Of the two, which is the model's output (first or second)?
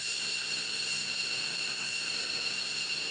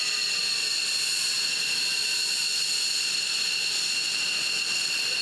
first